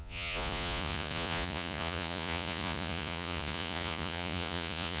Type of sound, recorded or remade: remade